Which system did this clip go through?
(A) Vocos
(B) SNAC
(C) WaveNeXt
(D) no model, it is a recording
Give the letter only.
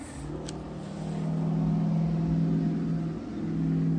D